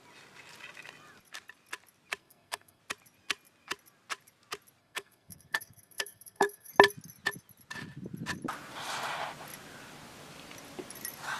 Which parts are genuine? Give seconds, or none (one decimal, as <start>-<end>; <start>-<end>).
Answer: 0.0-2.2; 2.8-4.8; 6.7-11.4